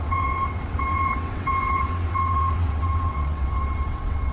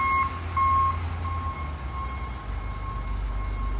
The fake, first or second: first